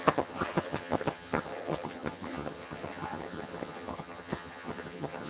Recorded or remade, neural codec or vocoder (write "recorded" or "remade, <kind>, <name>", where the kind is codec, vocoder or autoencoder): remade, vocoder, HiFi-GAN